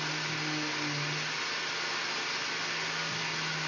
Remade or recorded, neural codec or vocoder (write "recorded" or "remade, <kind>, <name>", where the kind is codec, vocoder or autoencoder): recorded